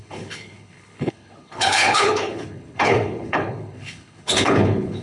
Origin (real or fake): fake